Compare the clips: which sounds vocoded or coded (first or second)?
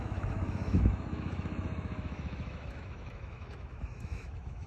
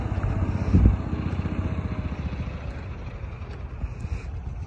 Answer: first